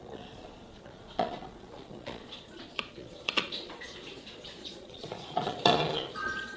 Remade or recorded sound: remade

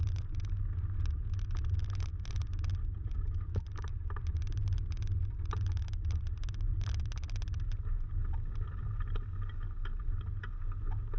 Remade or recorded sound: recorded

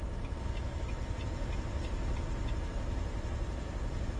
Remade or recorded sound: recorded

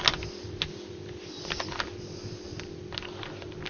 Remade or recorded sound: recorded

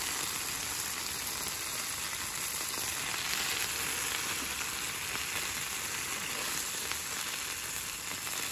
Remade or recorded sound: recorded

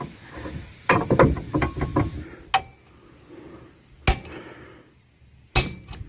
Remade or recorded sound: recorded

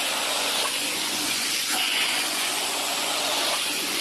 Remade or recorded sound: remade